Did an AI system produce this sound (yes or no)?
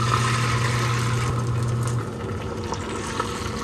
no